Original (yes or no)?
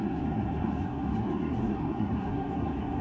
no